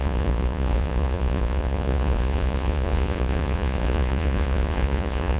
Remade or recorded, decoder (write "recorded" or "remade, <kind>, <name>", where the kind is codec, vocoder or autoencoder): remade, vocoder, Vocos